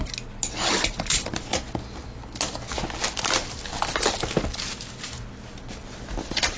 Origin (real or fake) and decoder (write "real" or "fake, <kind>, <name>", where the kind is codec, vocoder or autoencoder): real